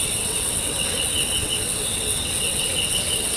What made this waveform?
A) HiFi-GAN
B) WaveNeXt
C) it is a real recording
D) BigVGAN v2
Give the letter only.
B